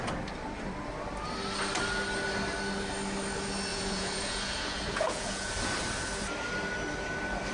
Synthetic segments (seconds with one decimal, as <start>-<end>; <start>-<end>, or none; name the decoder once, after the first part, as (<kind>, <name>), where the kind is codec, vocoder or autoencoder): 3.7-5.5 (vocoder, Vocos)